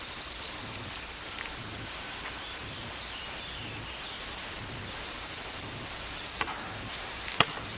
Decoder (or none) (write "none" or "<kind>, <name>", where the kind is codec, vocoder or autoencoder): vocoder, BigVGAN v2